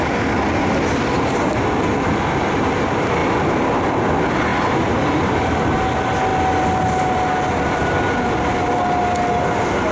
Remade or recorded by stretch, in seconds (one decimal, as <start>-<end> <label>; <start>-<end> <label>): 0.0-9.9 recorded